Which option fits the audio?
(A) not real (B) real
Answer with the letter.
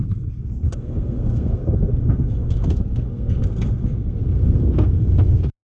A